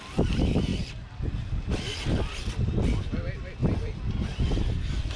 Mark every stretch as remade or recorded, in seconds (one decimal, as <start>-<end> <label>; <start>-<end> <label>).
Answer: 0.0-0.7 recorded; 0.7-1.2 remade; 1.2-3.6 recorded; 3.6-4.4 remade; 4.4-5.2 recorded